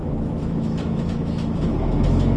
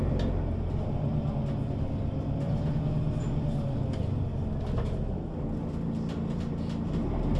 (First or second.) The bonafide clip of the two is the second